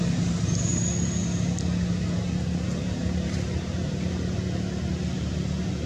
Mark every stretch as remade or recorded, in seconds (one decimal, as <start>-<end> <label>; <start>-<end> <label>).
0.0-5.9 recorded